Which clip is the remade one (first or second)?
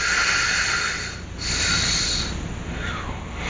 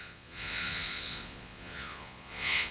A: second